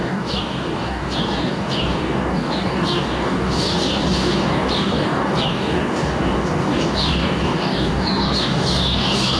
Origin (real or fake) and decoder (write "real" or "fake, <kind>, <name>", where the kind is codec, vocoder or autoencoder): fake, codec, DAC